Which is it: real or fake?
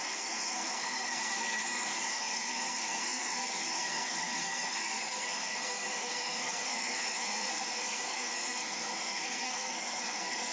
fake